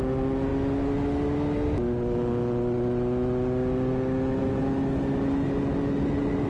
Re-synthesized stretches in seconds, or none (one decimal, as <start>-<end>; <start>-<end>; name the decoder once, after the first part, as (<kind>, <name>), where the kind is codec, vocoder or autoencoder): none

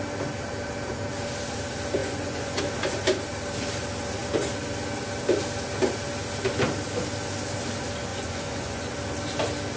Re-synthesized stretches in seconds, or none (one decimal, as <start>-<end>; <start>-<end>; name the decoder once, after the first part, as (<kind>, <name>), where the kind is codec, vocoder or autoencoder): 2.0-2.6 (vocoder, Vocos); 8.1-8.9

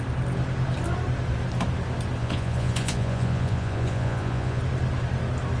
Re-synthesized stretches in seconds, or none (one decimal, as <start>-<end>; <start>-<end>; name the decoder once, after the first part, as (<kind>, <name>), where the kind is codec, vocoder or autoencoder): 2.2-4.6 (vocoder, Vocos)

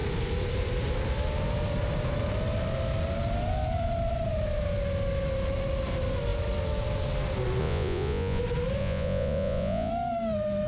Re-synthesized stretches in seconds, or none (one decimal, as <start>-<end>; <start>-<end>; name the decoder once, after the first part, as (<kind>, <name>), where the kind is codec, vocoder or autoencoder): 7.6-8.4 (vocoder, Vocos); 8.8-9.9

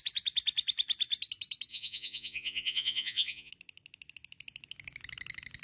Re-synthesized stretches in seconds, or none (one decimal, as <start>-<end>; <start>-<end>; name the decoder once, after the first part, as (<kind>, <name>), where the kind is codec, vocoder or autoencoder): 1.7-3.5 (vocoder, Vocos)